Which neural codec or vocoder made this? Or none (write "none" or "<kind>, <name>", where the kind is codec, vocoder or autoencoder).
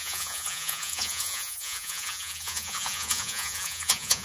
vocoder, Vocos